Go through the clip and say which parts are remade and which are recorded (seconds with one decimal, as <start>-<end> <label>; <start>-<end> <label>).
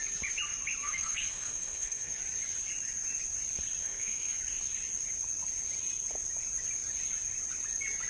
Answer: 0.0-0.8 recorded; 0.8-2.2 remade; 2.2-3.8 recorded; 3.8-4.4 remade; 4.4-8.1 recorded